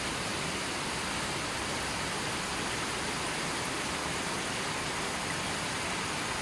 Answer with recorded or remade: recorded